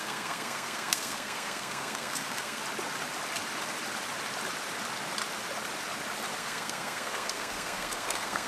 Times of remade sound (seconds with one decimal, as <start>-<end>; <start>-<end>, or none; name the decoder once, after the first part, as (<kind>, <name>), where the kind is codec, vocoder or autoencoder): 0.0-2.6 (codec, SNAC); 6.4-8.5